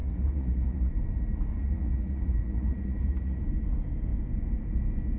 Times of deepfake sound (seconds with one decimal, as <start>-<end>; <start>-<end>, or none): 0.0-0.9; 1.5-3.4